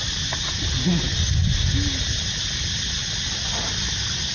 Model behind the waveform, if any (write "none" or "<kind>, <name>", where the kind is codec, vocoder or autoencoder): none